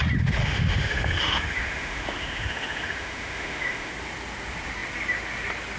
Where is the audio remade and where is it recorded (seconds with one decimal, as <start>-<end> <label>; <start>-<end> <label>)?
0.0-0.4 recorded; 0.4-3.9 remade; 3.9-5.8 recorded